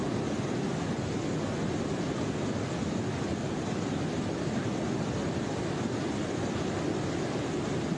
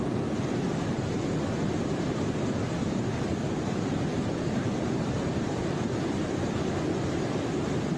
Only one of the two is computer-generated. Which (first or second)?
second